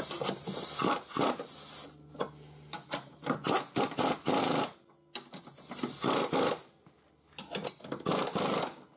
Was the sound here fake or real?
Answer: real